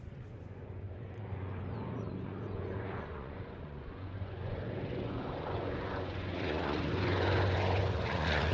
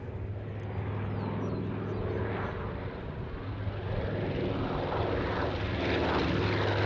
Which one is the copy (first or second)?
first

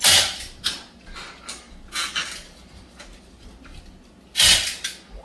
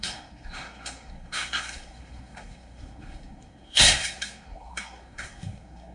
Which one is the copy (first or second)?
second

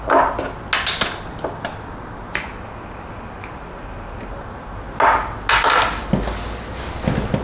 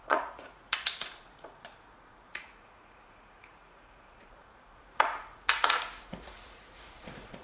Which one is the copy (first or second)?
second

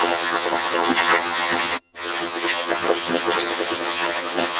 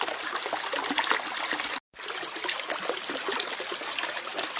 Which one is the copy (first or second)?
first